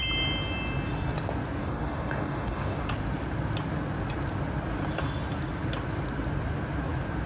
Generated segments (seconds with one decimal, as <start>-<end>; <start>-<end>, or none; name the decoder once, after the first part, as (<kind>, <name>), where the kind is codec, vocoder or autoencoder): 1.6-2.9 (codec, DAC)